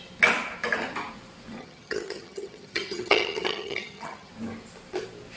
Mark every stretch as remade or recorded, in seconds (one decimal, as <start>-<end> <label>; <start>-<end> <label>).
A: 0.0-1.6 recorded; 1.6-4.3 remade; 4.3-5.4 recorded